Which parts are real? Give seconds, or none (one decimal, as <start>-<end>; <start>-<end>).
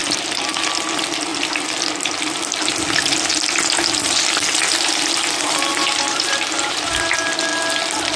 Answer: 0.7-5.7; 7.1-8.2